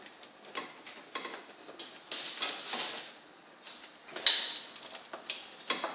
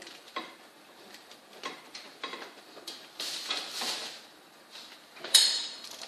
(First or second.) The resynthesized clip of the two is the second